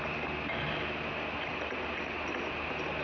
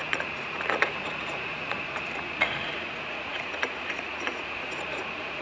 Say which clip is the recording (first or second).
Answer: first